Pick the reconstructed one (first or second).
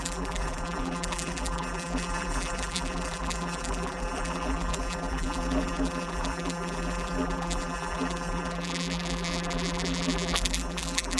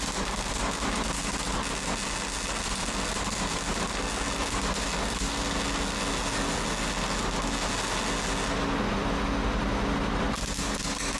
first